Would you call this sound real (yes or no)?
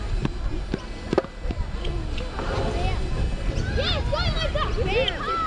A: yes